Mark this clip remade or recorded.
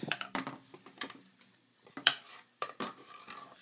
remade